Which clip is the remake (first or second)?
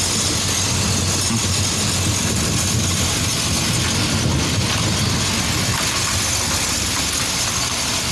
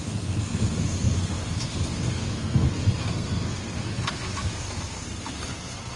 second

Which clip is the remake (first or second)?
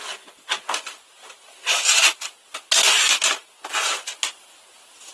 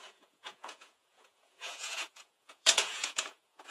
second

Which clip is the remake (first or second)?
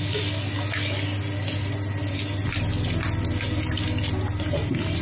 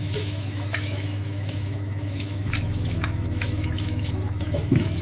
second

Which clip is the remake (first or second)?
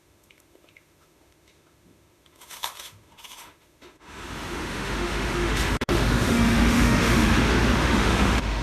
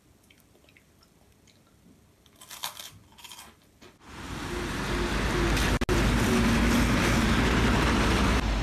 first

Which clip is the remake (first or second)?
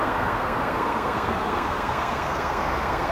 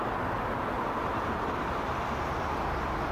first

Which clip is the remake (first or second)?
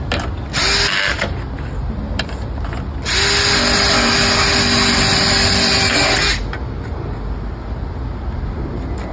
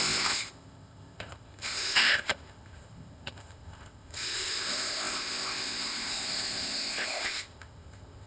second